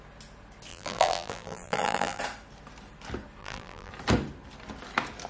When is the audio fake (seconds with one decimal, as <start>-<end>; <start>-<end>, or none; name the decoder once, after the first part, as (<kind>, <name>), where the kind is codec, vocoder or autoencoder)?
0.7-2.2 (vocoder, BigVGAN v2); 3.4-3.9